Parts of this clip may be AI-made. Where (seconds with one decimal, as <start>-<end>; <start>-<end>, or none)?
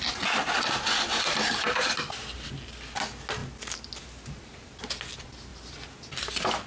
none